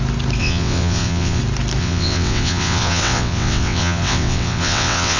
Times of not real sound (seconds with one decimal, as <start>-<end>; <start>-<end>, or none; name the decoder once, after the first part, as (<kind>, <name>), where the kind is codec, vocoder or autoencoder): 0.4-1.4 (vocoder, WaveNeXt); 1.8-5.2